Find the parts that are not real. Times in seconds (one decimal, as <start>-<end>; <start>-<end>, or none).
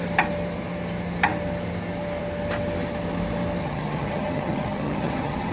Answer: 3.6-5.5